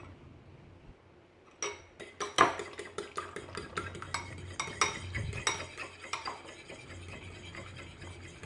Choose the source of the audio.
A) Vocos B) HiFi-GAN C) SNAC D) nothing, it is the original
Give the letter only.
D